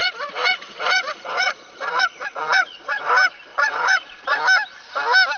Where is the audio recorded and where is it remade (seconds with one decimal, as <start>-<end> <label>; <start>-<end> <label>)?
0.0-3.1 remade; 3.1-3.5 recorded; 3.5-4.4 remade; 4.4-5.4 recorded